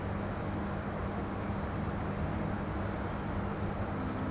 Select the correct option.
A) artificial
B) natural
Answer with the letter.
B